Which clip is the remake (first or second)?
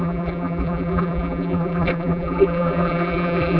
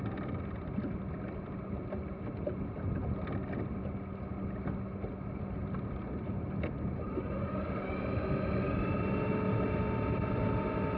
first